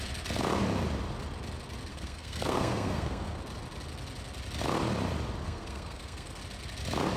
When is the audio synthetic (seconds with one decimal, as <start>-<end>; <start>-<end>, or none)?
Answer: 1.9-3.4; 5.4-6.4